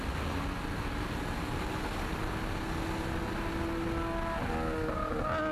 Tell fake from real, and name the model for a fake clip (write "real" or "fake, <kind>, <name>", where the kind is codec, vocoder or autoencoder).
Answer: real